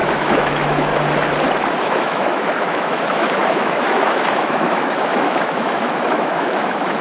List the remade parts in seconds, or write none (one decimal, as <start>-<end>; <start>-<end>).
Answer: 0.0-0.9; 1.8-7.0